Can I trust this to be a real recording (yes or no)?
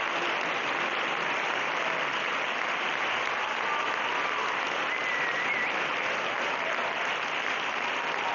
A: yes